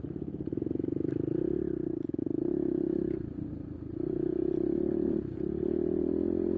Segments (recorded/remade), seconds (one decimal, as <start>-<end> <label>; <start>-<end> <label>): 0.0-6.6 recorded